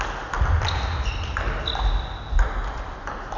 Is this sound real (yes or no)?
yes